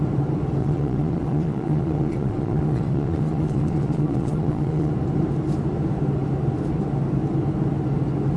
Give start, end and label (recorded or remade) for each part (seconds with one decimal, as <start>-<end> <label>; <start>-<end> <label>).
0.0-0.6 recorded; 0.6-4.9 remade; 4.9-8.4 recorded